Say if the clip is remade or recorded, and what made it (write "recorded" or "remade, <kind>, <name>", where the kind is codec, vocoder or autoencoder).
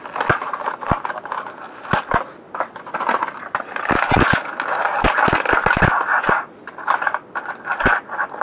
recorded